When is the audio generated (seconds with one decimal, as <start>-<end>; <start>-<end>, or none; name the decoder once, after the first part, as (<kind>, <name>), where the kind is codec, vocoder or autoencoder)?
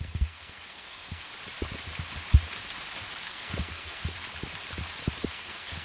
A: 0.0-1.3 (codec, SNAC); 3.2-4.0; 5.3-5.8